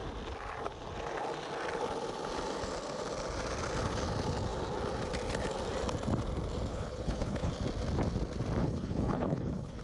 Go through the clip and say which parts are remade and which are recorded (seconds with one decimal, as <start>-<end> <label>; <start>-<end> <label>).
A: 0.0-6.7 recorded; 6.7-7.5 remade; 7.5-8.6 recorded; 8.6-9.8 remade